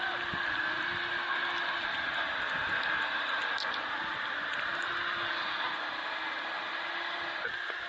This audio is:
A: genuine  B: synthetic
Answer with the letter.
A